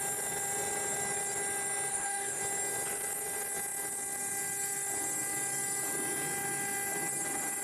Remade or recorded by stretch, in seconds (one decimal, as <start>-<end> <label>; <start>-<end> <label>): 0.0-1.9 recorded; 1.9-2.4 remade; 2.4-7.6 recorded